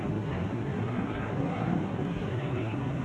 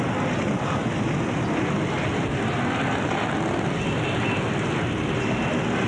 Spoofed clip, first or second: first